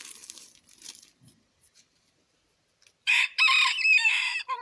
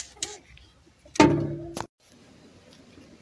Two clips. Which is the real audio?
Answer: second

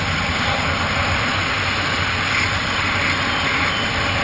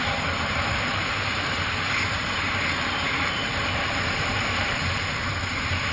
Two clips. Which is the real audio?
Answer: first